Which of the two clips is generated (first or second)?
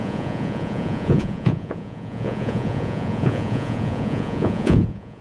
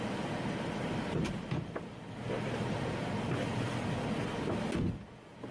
first